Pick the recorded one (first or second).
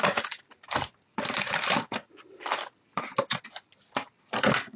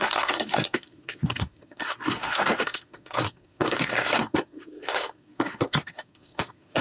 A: first